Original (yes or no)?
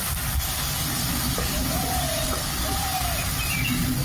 no